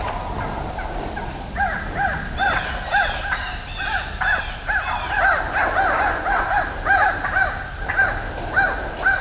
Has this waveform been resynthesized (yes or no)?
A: no